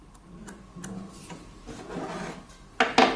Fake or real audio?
real